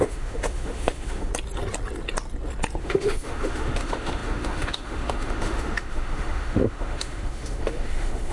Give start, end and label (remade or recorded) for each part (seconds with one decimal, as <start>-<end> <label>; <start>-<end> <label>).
0.0-1.3 remade; 1.3-2.8 recorded; 2.8-8.3 remade